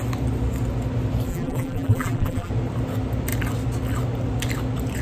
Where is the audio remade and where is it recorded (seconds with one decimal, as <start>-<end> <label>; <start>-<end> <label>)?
0.0-1.3 recorded; 1.3-2.5 remade; 2.5-5.0 recorded

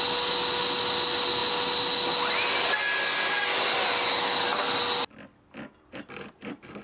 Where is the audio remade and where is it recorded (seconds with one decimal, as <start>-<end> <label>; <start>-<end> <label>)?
0.0-6.8 recorded